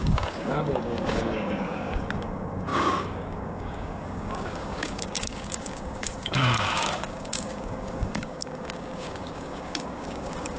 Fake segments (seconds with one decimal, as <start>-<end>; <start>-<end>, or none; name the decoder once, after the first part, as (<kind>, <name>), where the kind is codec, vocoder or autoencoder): 0.0-10.6 (codec, DAC)